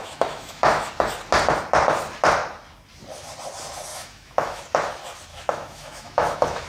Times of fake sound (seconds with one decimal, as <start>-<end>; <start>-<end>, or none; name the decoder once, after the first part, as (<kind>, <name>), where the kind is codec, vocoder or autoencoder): 0.0-0.9 (autoencoder, DAC-VAE); 3.9-4.6; 5.3-6.7